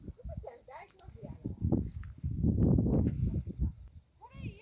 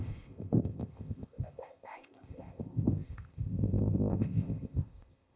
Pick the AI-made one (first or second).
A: second